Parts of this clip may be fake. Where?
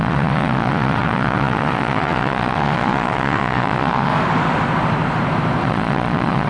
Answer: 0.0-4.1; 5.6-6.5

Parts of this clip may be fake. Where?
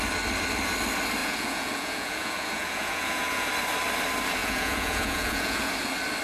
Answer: 1.2-3.5; 4.4-5.7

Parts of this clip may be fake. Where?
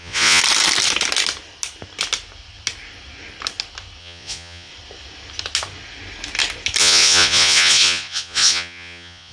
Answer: 0.0-0.4; 4.0-4.7; 6.8-9.3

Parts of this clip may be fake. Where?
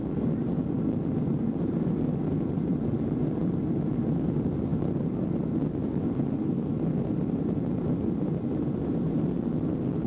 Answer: none